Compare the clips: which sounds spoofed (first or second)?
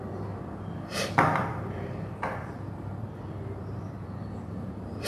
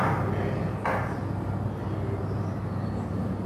first